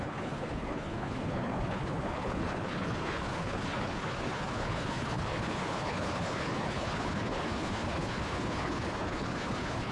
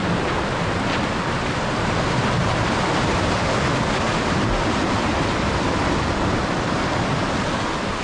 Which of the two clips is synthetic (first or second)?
first